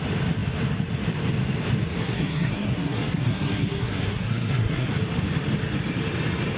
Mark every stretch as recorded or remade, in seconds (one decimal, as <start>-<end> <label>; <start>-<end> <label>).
0.0-2.0 recorded; 2.0-4.9 remade; 4.9-6.6 recorded